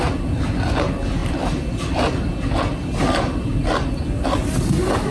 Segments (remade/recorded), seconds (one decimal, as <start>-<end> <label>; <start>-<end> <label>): 0.0-1.2 recorded; 1.2-2.1 remade; 2.1-5.1 recorded